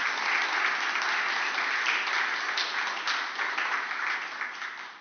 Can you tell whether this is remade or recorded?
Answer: recorded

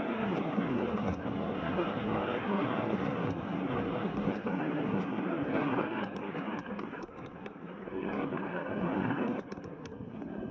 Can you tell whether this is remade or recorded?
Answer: remade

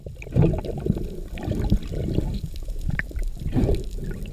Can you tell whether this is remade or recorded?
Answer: recorded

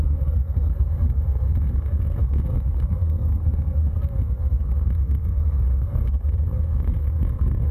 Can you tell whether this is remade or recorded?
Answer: remade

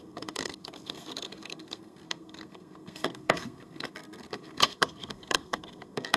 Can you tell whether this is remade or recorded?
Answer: remade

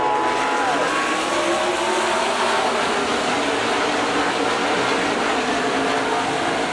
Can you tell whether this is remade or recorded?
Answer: recorded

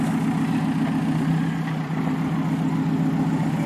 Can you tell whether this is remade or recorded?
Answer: recorded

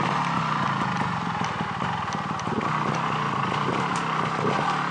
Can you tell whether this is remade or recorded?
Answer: recorded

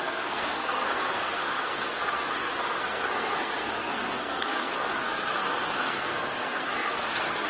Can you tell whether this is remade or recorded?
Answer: remade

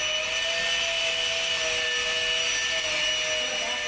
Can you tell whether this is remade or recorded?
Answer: recorded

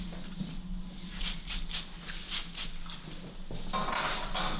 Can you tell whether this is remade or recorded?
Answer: recorded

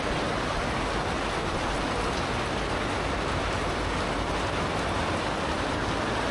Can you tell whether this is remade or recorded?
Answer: recorded